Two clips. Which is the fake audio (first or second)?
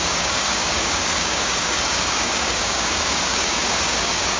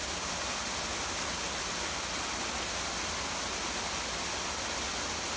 first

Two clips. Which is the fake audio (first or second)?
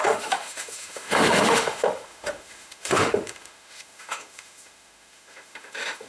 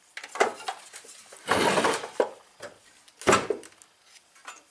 first